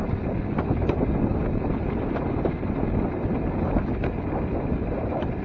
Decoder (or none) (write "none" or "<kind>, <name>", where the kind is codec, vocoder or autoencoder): none